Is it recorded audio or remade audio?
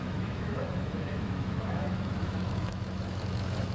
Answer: remade